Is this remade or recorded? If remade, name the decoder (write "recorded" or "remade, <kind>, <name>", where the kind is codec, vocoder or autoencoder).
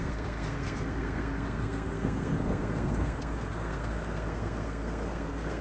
remade, codec, SNAC